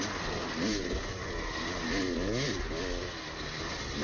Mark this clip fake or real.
real